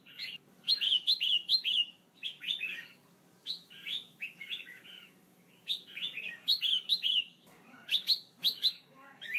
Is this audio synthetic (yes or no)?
yes